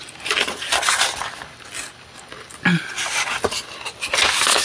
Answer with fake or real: real